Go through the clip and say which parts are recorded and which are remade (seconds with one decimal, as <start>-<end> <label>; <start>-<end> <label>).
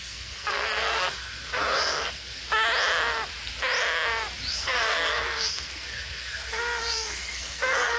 0.0-2.4 remade; 2.4-4.5 recorded; 4.5-8.0 remade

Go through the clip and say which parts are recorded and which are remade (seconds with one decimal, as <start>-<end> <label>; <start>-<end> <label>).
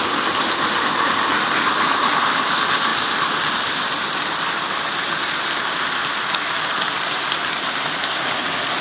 0.0-8.8 recorded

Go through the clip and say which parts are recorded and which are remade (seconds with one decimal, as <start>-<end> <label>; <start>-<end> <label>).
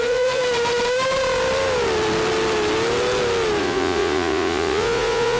0.0-0.4 remade; 0.4-3.6 recorded; 3.6-5.4 remade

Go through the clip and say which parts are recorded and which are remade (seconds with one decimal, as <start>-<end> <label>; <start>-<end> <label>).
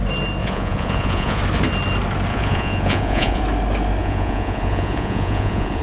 0.0-0.4 recorded; 0.4-1.4 remade; 1.4-2.3 recorded; 2.3-3.4 remade; 3.4-4.0 recorded; 4.0-5.8 remade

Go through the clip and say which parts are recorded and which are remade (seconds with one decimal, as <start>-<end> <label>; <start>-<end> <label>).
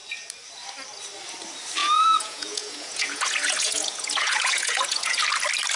0.0-1.8 recorded; 1.8-5.2 remade; 5.2-5.8 recorded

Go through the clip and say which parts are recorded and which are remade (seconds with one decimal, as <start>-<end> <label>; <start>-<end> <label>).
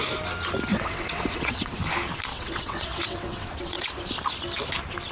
0.0-0.7 recorded; 0.7-1.9 remade; 1.9-2.3 recorded; 2.3-4.0 remade; 4.0-5.1 recorded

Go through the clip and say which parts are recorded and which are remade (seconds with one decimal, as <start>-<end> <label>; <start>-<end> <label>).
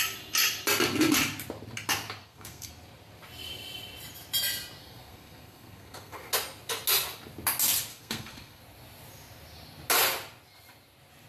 0.0-2.2 recorded; 2.2-2.7 remade; 2.7-4.8 recorded; 4.8-6.3 remade; 6.3-7.9 recorded; 7.9-8.6 remade; 8.6-11.3 recorded